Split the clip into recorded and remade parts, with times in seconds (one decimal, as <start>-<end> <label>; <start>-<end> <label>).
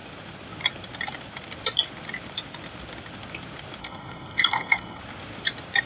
0.0-3.8 recorded; 3.8-5.0 remade; 5.0-5.9 recorded